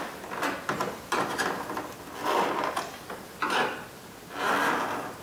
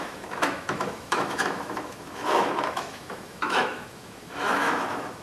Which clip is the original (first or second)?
first